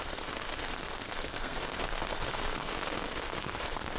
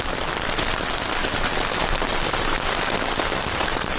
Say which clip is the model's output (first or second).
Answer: first